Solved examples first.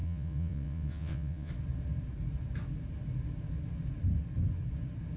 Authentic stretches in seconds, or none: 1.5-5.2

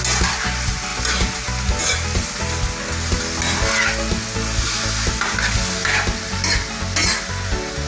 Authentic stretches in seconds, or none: 0.0-7.9

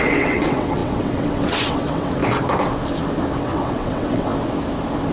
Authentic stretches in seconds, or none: 2.2-3.4; 4.3-5.1

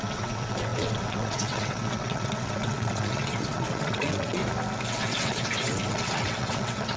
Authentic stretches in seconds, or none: 4.4-4.9